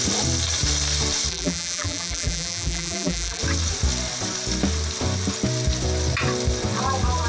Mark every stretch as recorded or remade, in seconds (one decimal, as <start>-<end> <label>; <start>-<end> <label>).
0.0-1.3 recorded; 1.3-3.4 remade; 3.4-7.3 recorded